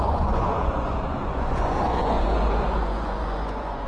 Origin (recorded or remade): remade